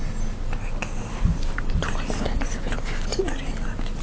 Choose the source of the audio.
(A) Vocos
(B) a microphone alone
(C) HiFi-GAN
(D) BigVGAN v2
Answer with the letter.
B